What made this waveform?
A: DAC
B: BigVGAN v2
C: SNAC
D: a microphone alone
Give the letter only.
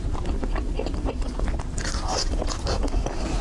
D